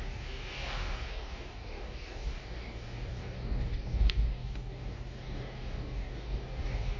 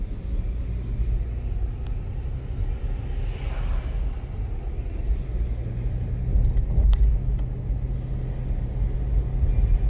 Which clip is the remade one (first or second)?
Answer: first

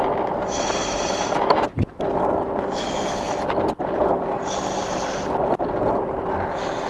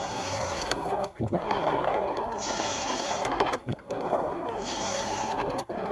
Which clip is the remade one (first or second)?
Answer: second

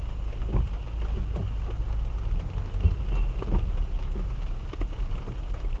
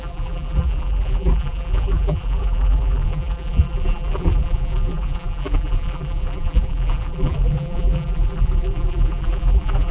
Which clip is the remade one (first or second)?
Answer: second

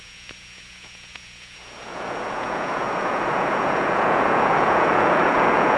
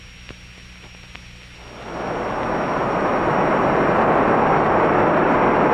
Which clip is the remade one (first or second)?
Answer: first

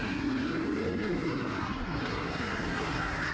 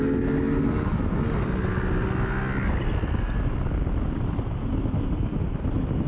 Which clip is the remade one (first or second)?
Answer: first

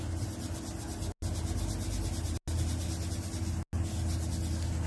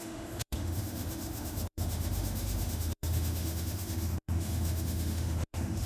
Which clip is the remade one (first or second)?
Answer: second